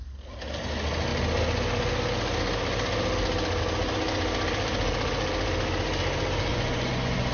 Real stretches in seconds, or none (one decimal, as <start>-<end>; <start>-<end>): 0.0-6.5